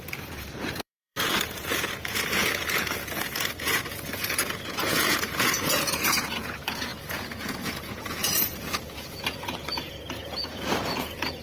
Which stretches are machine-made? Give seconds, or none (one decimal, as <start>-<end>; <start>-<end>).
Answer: 0.0-11.4